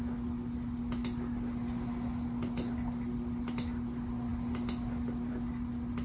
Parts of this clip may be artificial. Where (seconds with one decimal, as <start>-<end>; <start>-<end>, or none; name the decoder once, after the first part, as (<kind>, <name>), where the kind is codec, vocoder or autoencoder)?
none